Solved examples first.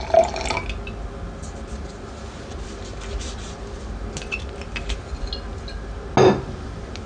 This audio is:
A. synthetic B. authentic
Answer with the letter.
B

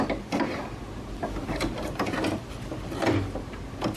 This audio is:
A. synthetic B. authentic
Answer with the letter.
B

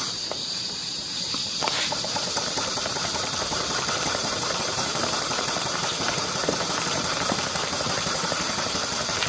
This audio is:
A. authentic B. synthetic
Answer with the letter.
B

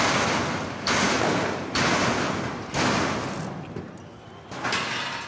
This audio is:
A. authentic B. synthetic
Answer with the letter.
A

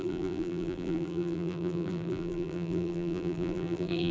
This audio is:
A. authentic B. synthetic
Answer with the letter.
B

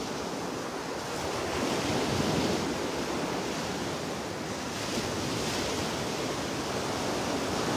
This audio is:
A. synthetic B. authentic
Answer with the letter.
B